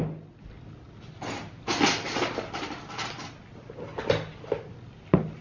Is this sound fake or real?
real